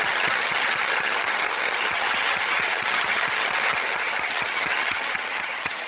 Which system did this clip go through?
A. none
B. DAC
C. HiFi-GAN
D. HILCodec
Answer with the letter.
C